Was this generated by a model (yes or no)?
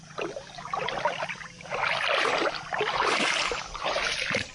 no